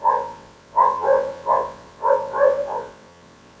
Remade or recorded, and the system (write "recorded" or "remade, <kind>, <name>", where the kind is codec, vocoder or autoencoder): remade, vocoder, WaveNeXt